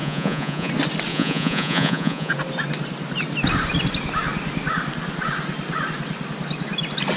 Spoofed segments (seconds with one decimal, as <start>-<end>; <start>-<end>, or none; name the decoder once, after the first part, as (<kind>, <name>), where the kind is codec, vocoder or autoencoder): 0.0-0.7 (vocoder, Vocos); 1.1-2.3